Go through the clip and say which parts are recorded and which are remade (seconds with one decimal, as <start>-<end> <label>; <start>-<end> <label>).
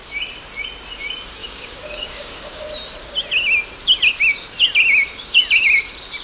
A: 0.0-1.4 recorded; 1.4-2.6 remade; 2.6-6.2 recorded